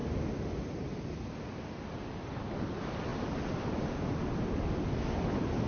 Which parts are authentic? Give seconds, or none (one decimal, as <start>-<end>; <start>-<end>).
0.0-5.7